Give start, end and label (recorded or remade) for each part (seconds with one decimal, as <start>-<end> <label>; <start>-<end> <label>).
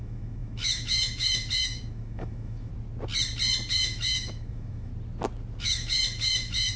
0.0-2.7 remade; 2.7-3.7 recorded; 3.7-4.9 remade; 4.9-5.6 recorded; 5.6-6.8 remade